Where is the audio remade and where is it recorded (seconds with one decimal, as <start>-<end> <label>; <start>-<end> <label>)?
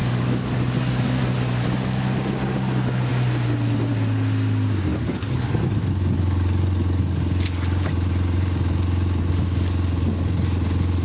0.0-1.2 remade; 1.2-4.9 recorded; 4.9-7.9 remade; 7.9-11.0 recorded